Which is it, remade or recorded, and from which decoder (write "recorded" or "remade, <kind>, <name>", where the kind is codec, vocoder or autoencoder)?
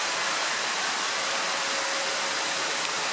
recorded